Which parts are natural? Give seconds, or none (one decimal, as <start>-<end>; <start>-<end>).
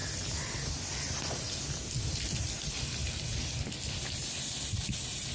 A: 0.0-5.3